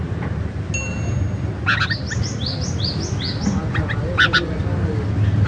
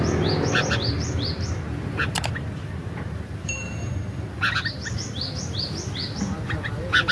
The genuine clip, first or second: first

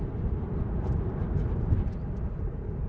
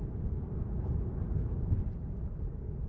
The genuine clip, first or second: second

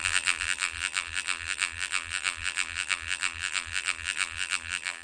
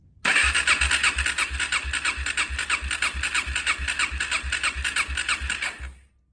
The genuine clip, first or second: second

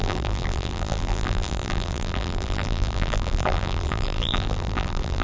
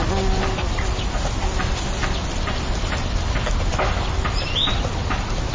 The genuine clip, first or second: second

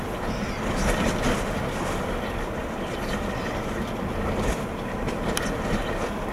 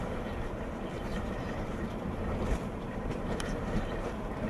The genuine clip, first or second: first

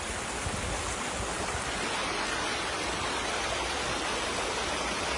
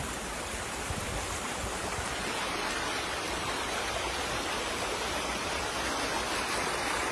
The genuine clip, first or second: first